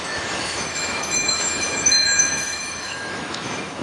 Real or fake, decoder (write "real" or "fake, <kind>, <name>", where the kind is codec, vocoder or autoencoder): fake, autoencoder, DAC-VAE